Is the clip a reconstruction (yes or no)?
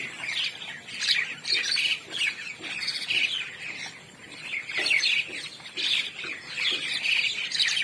no